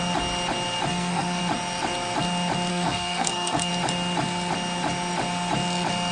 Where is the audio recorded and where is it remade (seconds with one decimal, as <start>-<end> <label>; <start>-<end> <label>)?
0.0-0.9 recorded; 0.9-1.4 remade; 1.4-2.7 recorded; 2.7-3.7 remade; 3.7-6.1 recorded